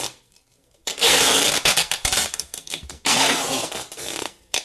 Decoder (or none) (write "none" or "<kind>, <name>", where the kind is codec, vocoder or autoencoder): codec, SNAC